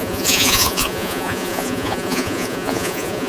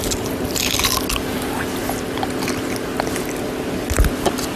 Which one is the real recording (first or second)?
second